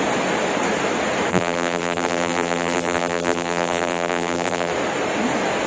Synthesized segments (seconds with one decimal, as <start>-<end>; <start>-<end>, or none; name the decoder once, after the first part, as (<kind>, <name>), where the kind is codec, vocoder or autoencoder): 1.3-4.7 (vocoder, BigVGAN v2)